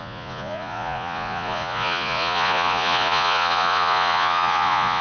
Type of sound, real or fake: fake